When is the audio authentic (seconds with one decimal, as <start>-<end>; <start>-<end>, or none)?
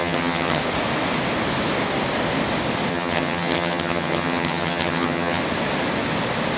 0.6-2.9; 5.4-6.6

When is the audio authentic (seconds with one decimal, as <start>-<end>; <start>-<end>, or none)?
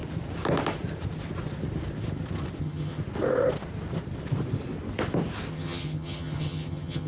0.0-2.6; 3.0-5.5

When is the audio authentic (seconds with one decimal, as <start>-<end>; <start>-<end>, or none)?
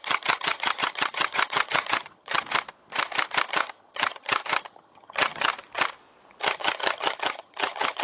2.4-3.5; 5.5-6.4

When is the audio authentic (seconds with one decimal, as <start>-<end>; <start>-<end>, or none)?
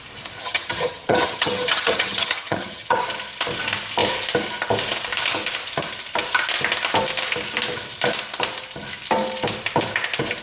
0.0-0.4; 3.0-10.4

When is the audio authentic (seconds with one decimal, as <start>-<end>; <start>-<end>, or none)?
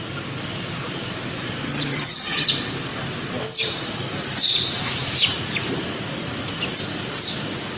0.0-1.7; 2.5-7.8